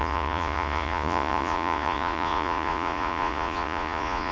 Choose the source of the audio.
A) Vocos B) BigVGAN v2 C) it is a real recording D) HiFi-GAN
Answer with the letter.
A